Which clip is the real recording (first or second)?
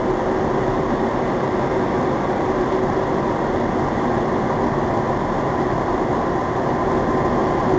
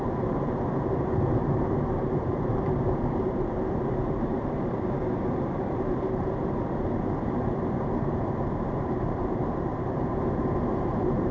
first